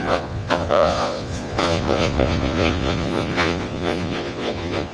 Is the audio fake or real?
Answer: fake